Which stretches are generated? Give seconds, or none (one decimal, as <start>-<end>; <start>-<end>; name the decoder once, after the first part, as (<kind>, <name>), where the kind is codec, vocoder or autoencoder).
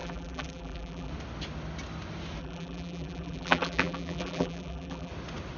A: 0.0-1.1 (vocoder, BigVGAN v2); 2.4-5.1